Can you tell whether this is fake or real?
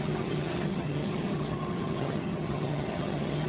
fake